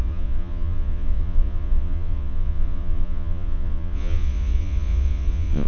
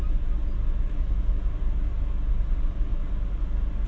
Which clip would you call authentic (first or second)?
second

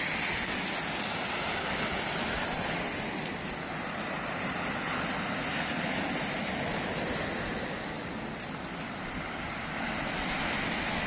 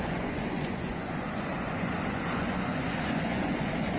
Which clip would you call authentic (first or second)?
first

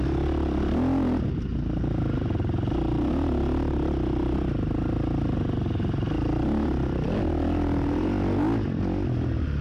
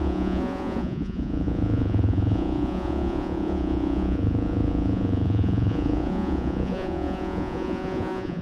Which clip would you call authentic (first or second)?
first